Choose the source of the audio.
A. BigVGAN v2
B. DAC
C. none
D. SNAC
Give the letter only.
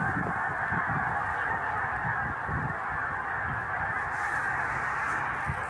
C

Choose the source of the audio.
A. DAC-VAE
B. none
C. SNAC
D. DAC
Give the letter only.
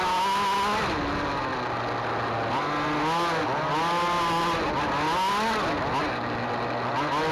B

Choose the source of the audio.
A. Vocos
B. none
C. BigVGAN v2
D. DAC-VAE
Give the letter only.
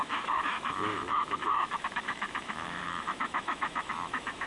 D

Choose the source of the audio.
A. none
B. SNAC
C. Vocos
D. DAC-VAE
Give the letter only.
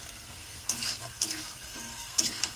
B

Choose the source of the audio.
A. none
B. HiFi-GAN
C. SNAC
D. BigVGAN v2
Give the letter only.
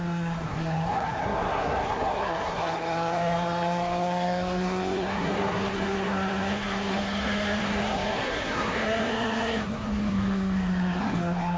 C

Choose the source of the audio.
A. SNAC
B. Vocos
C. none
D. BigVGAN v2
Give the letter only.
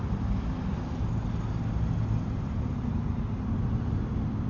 C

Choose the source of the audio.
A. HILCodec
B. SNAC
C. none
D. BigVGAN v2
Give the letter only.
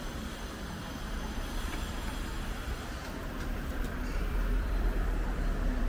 D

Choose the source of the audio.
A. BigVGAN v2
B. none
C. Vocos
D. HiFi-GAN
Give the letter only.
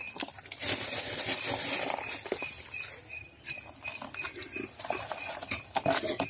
A